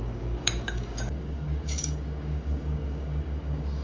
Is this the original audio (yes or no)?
no